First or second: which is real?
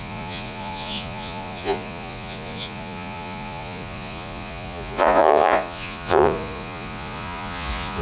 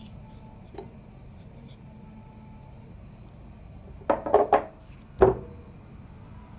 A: second